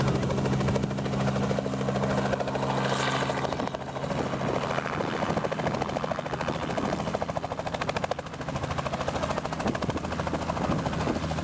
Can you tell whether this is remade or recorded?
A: recorded